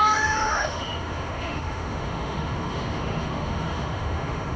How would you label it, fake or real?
fake